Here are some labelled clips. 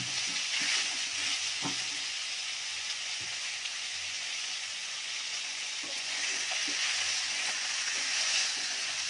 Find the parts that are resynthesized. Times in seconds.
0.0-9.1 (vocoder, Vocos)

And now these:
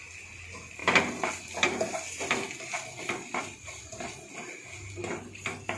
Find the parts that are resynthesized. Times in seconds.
none

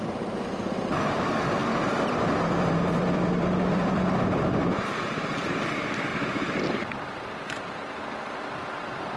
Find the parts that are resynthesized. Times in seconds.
0.0-1.6 (vocoder, BigVGAN v2); 2.1-9.2

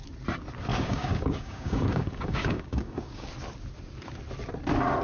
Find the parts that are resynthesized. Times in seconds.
0.7-3.3 (codec, DAC)

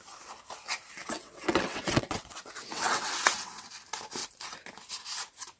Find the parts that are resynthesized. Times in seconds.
1.0-3.7 (vocoder, WaveNeXt)

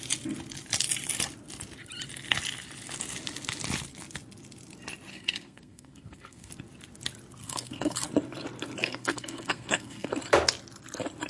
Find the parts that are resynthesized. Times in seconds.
5.1-6.5 (codec, SNAC); 7.4-8.1; 8.8-10.1

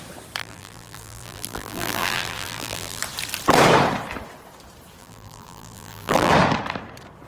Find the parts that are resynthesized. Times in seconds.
0.4-3.0 (vocoder, BigVGAN v2); 5.0-6.3

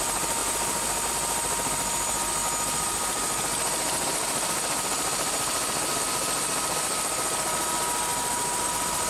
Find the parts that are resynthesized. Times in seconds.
0.4-1.1 (vocoder, BigVGAN v2); 8.1-9.1